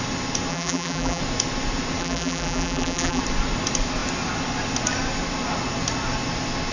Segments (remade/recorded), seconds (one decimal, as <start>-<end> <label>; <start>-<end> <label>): 0.0-0.5 recorded; 0.5-1.2 remade; 1.2-2.0 recorded; 2.0-3.2 remade; 3.2-6.7 recorded